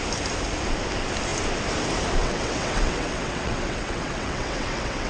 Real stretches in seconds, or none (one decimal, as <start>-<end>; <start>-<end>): 0.0-2.2